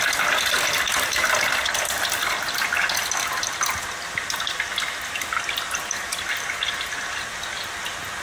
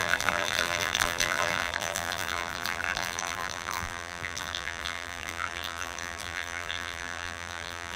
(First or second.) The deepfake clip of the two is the second